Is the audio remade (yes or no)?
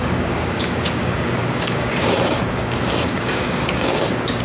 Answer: yes